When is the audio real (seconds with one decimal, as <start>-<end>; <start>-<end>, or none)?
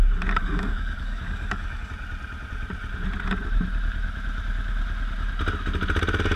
0.0-0.4; 1.9-6.4